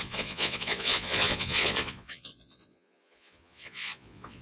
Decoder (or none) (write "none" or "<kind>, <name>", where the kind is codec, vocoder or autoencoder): vocoder, Vocos